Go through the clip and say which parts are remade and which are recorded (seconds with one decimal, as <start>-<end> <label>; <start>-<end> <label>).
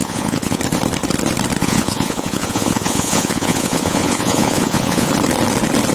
0.0-0.6 remade; 0.6-1.6 recorded; 1.6-5.1 remade; 5.1-5.9 recorded